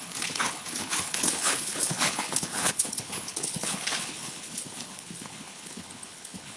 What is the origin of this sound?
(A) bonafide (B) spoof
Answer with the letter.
B